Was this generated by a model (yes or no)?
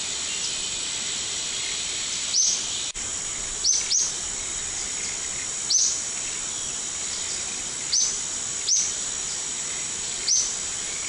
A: no